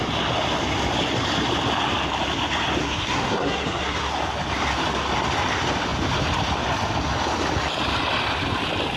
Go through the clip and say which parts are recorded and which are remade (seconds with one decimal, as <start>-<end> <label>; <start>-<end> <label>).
0.0-2.8 recorded; 2.8-4.1 remade; 4.1-9.0 recorded